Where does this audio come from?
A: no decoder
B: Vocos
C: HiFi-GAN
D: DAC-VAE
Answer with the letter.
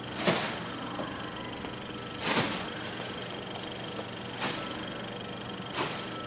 A